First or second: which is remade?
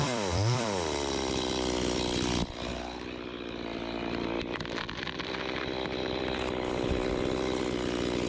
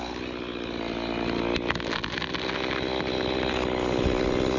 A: first